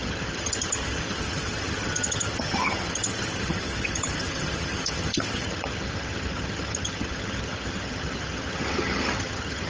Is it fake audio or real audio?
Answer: fake